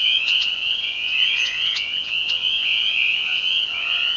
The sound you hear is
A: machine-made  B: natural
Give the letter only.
A